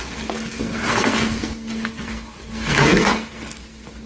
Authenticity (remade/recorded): remade